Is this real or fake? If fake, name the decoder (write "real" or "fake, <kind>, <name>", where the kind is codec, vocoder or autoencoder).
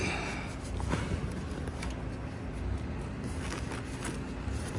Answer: real